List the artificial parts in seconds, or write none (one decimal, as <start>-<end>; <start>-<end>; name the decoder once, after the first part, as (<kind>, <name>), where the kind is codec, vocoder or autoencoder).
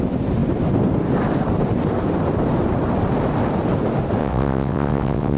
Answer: 4.2-5.4 (vocoder, WaveNeXt)